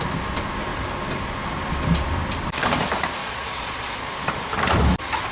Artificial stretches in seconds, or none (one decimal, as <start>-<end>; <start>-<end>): 3.2-4.0